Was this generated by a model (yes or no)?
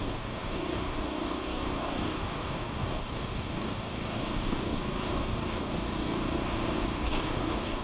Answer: yes